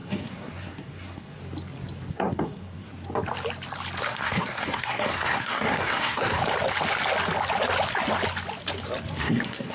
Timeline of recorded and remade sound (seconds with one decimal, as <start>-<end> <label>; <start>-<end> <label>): 0.0-1.4 remade; 1.4-2.1 recorded; 2.1-2.9 remade; 2.9-4.0 recorded; 4.0-6.4 remade; 6.4-9.2 recorded; 9.2-9.7 remade